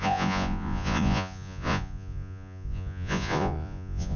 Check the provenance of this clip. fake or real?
fake